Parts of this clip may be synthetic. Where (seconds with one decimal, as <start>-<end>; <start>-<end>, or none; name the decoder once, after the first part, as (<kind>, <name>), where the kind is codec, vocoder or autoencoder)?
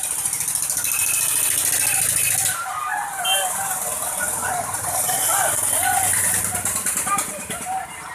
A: none